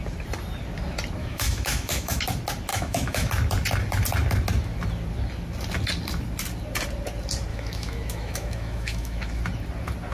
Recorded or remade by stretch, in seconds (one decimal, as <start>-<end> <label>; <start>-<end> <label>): 0.0-1.2 recorded; 1.2-2.2 remade; 2.2-2.7 recorded; 2.7-3.3 remade; 3.3-7.5 recorded; 7.5-9.4 remade; 9.4-10.1 recorded